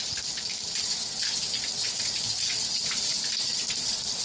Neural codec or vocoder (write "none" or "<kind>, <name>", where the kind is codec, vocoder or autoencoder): none